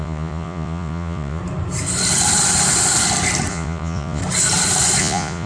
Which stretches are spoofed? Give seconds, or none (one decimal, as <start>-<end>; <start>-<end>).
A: 0.0-1.4; 3.5-4.2; 5.0-5.5